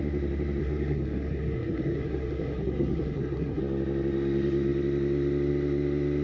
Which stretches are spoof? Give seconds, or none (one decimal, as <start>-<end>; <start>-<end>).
0.6-3.6